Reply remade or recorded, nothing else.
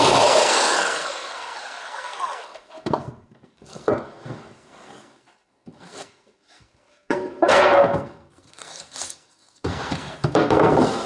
remade